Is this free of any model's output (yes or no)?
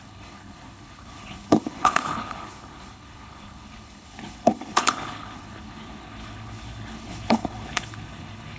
no